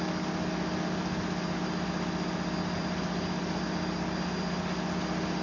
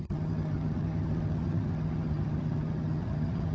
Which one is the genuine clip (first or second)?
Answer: first